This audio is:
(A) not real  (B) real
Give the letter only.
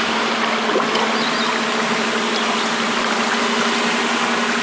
B